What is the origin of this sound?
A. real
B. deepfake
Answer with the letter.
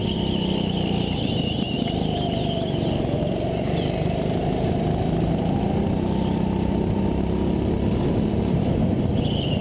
A